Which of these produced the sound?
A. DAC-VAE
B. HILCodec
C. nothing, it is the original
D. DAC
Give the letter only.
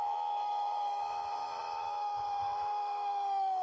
A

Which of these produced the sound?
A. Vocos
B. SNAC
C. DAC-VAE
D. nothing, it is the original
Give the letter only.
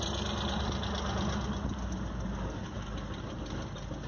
D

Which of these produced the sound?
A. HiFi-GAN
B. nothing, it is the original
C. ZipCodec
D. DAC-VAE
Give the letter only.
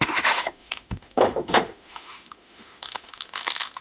D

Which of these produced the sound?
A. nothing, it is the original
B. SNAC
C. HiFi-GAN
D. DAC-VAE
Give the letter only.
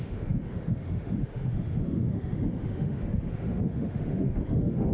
D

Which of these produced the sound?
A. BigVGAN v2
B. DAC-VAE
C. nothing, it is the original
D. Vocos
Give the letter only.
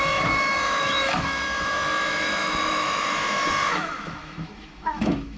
B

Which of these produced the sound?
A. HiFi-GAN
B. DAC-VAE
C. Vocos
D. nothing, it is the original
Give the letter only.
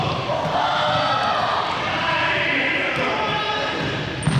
D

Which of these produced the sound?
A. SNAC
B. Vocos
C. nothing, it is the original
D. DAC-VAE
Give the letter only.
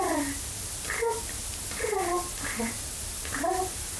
C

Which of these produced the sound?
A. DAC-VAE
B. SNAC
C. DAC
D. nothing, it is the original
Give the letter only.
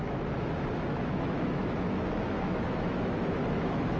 A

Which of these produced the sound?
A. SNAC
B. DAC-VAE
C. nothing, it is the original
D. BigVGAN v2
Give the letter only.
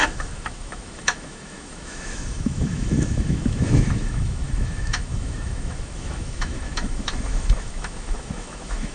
B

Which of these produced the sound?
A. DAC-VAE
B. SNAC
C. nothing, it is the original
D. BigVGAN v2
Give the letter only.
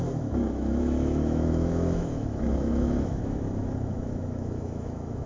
A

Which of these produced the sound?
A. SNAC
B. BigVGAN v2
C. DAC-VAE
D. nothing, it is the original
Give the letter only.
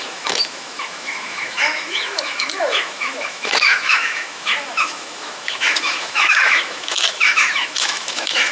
C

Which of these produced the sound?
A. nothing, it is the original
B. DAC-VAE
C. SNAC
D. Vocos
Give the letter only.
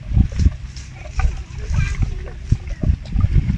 A